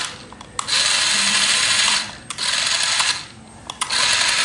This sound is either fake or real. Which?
real